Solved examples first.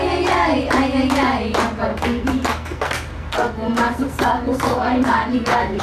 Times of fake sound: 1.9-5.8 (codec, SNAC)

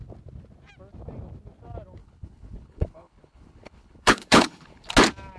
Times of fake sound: 2.0-4.9 (codec, HILCodec)

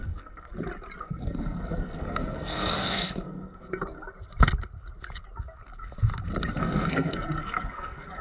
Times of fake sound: 0.0-0.5 (codec, SNAC); 1.0-3.9; 6.6-8.2